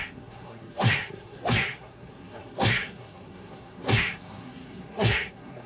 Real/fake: fake